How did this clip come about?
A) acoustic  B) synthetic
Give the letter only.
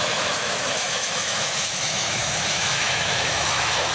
B